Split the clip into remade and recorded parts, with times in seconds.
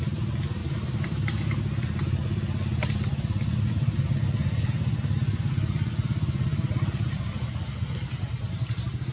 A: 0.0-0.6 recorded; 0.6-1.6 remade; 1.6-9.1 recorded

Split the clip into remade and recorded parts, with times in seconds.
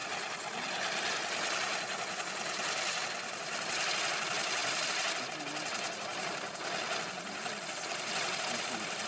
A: 0.0-3.9 remade; 3.9-4.6 recorded; 4.6-5.2 remade; 5.2-6.1 recorded; 6.1-9.1 remade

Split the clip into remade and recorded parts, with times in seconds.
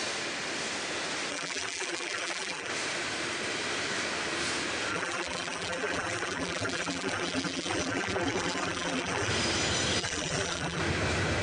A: 0.0-1.3 recorded; 1.3-2.7 remade; 2.7-4.9 recorded; 4.9-9.3 remade; 9.3-10.0 recorded; 10.0-10.8 remade; 10.8-11.4 recorded